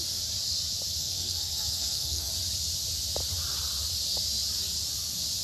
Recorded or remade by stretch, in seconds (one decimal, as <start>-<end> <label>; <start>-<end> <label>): 0.0-1.0 recorded; 1.0-2.3 remade; 2.3-5.4 recorded